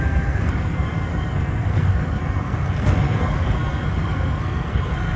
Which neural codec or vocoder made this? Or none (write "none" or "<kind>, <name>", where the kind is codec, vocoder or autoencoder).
codec, SNAC